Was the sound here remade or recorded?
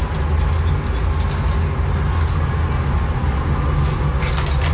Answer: recorded